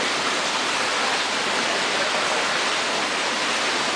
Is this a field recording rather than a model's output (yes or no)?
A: yes